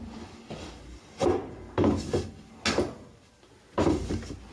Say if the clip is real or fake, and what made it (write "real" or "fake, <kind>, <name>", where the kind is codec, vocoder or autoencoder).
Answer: real